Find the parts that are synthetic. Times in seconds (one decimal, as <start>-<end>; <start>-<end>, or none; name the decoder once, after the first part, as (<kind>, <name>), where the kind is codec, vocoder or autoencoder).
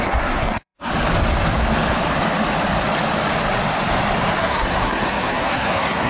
0.0-0.9 (codec, SNAC); 4.4-6.1